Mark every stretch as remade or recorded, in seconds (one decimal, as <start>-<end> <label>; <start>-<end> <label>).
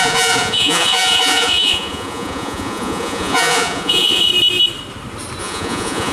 0.0-4.3 remade; 4.3-5.4 recorded; 5.4-6.1 remade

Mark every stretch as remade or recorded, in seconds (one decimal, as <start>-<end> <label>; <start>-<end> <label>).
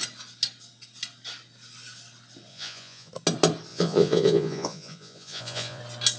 0.0-2.5 recorded; 2.5-3.1 remade; 3.1-3.7 recorded; 3.7-5.8 remade; 5.8-6.2 recorded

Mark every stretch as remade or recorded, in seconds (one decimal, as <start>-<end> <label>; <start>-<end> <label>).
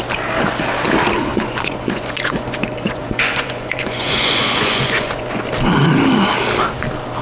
0.0-1.3 recorded; 1.3-5.4 remade; 5.4-7.2 recorded